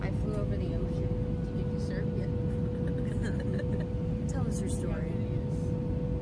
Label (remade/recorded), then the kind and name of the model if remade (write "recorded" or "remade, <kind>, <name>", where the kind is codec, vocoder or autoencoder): recorded